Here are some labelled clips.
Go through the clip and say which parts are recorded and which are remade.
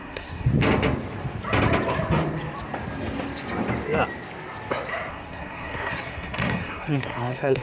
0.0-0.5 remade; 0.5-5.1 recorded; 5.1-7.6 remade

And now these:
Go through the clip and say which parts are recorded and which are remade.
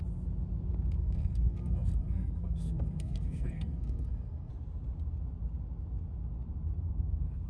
0.0-1.0 recorded; 1.0-4.5 remade; 4.5-7.5 recorded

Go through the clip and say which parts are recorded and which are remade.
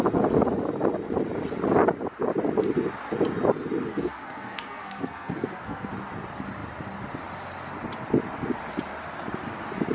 0.0-3.9 recorded; 3.9-5.9 remade; 5.9-9.9 recorded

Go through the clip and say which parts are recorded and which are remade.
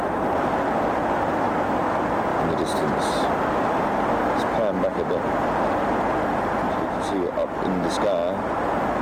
0.0-9.0 recorded